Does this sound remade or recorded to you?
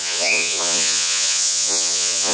remade